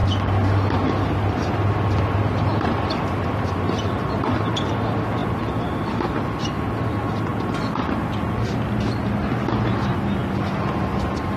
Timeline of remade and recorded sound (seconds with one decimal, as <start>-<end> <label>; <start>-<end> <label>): 0.0-11.4 recorded